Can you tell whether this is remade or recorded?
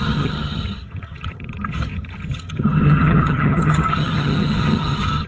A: remade